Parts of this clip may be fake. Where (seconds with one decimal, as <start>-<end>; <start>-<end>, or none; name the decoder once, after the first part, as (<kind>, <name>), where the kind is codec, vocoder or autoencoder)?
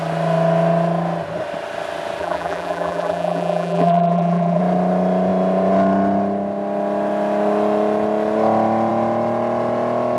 2.2-4.6 (vocoder, BigVGAN v2)